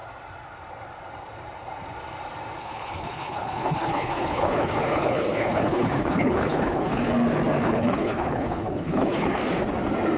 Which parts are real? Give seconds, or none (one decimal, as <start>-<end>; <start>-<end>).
0.0-2.6; 7.1-7.6; 9.4-10.2